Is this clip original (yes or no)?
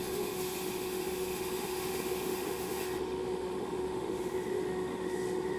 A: no